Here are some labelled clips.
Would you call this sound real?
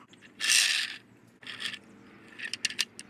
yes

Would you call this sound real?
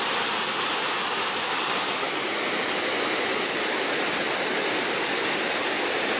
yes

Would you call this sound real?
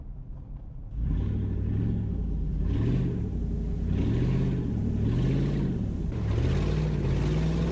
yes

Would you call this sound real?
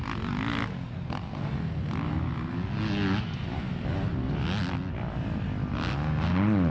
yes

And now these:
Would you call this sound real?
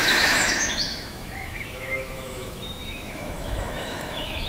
no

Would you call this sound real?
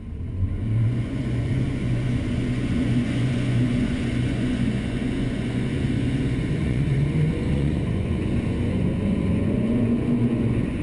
no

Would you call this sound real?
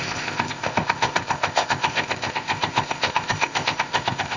no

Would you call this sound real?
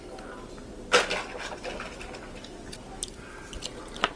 yes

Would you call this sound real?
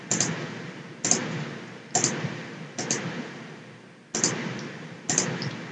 yes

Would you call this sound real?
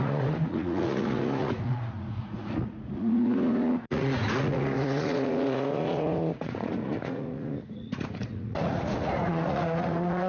no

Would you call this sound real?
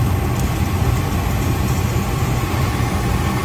yes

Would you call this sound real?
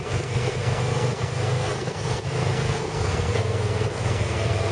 no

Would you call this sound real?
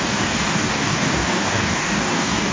no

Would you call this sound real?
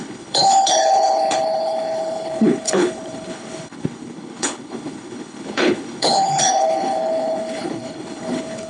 no